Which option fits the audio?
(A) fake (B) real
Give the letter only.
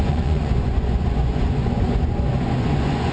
A